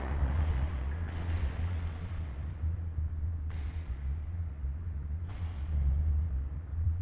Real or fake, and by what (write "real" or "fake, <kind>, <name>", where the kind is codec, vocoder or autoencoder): fake, vocoder, Vocos